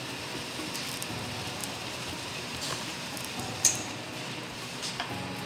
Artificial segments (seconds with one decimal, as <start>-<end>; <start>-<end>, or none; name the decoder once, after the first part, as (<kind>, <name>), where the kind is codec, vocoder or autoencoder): 1.6-4.9 (vocoder, BigVGAN v2)